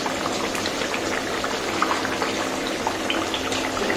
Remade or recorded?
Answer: recorded